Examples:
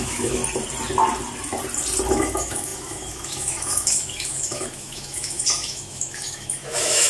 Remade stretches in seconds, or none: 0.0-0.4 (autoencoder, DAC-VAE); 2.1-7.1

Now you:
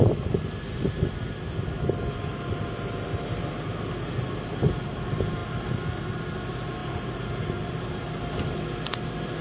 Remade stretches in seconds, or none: none

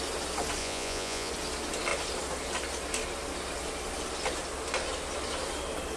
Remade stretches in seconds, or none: 0.6-1.3 (vocoder, Vocos)